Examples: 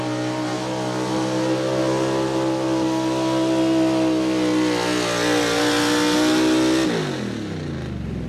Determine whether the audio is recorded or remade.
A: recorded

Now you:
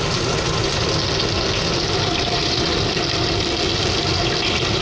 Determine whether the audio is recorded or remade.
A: recorded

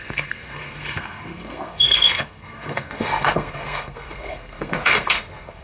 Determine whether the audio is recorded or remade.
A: remade